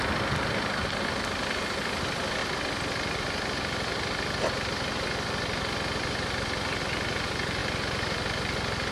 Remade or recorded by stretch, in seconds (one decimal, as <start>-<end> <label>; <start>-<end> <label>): 0.0-8.9 recorded